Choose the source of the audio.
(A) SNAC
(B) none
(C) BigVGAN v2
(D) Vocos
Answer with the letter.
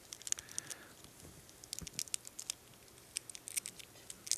B